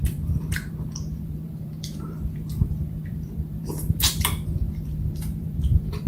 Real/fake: fake